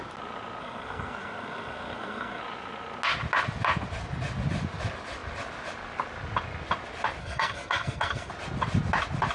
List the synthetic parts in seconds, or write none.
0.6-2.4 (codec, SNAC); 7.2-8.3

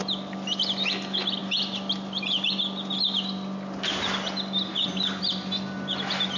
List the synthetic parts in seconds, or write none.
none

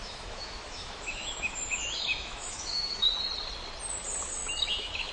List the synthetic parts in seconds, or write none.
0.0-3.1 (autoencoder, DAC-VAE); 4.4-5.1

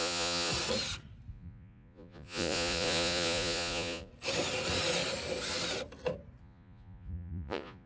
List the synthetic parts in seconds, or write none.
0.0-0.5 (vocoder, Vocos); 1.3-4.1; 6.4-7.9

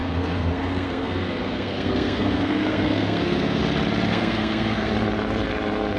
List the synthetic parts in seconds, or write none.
0.0-3.6 (codec, SNAC); 4.1-4.9